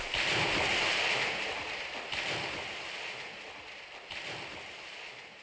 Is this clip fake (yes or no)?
no